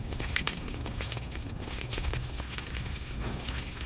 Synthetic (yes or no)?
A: yes